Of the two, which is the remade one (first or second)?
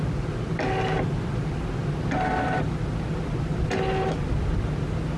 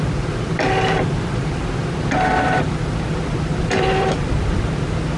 second